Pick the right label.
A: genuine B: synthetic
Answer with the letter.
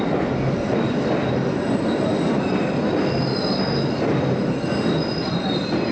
A